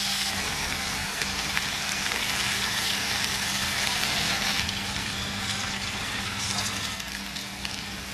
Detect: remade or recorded remade